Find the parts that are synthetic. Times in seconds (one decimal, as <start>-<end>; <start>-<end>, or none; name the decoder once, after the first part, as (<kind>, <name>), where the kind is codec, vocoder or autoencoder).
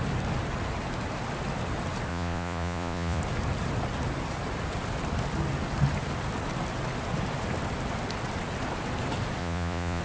2.1-3.2 (vocoder, Vocos); 9.4-10.0